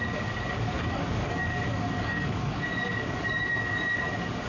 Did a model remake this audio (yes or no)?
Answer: yes